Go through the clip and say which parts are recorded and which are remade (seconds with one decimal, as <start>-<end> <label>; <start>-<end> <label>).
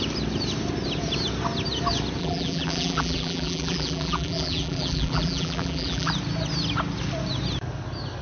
0.0-2.2 recorded; 2.2-6.1 remade; 6.1-8.2 recorded